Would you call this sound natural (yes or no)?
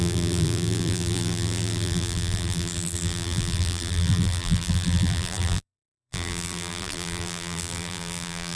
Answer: no